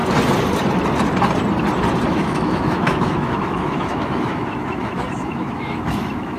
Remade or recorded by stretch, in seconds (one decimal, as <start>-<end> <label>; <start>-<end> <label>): 0.0-2.1 recorded; 2.1-6.4 remade